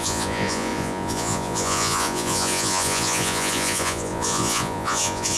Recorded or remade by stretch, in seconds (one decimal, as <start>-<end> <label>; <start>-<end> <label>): 0.0-5.4 remade